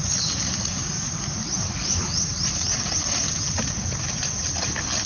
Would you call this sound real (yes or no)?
yes